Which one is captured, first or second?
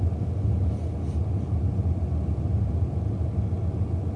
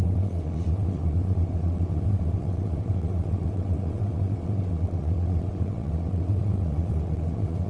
first